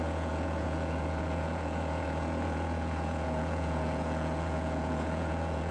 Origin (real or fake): fake